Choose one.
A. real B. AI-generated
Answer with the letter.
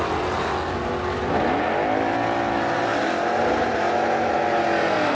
A